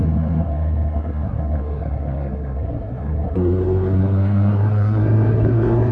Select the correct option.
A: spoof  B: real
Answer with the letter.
A